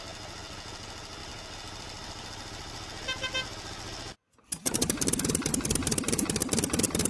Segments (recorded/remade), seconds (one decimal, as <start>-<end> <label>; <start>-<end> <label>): 0.0-7.1 recorded